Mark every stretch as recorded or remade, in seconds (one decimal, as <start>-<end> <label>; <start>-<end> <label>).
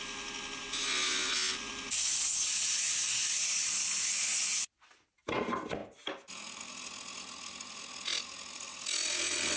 0.0-9.6 recorded